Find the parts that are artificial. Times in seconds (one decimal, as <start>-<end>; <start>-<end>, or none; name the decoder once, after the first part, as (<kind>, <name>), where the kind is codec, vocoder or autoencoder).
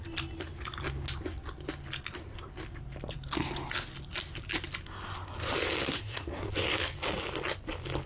5.8-6.5 (codec, SNAC)